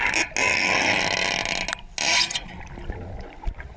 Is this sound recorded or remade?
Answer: recorded